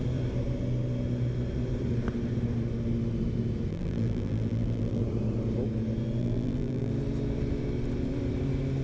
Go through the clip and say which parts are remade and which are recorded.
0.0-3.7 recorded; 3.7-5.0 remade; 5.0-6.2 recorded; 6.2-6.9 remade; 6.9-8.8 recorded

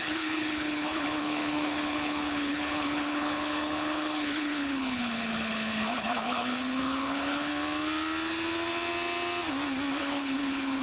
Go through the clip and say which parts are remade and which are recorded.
0.0-7.5 remade; 7.5-10.0 recorded; 10.0-10.8 remade

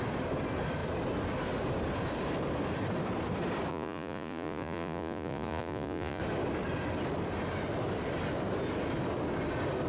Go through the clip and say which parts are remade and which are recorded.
0.0-3.7 recorded; 3.7-6.2 remade; 6.2-9.9 recorded

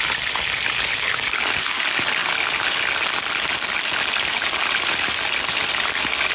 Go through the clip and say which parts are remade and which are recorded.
0.0-6.3 recorded

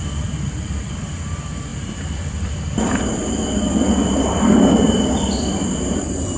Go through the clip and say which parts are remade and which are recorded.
0.0-6.4 remade

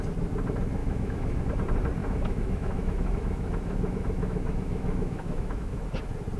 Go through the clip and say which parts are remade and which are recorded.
0.0-0.8 recorded; 0.8-1.4 remade; 1.4-2.0 recorded; 2.0-5.8 remade; 5.8-6.4 recorded

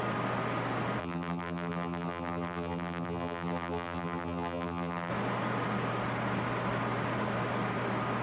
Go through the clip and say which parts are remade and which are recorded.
0.0-1.0 recorded; 1.0-5.1 remade; 5.1-8.2 recorded